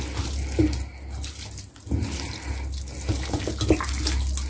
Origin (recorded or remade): recorded